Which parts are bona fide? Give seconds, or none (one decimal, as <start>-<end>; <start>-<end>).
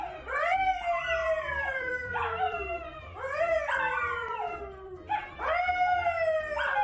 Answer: 0.0-1.2; 5.3-6.8